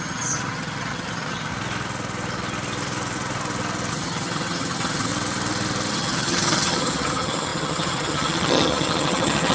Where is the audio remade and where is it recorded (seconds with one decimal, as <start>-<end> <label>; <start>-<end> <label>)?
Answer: 0.0-1.5 remade; 1.5-3.9 recorded; 3.9-5.1 remade; 5.1-5.9 recorded; 5.9-9.5 remade